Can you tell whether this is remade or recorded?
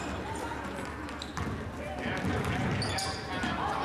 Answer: recorded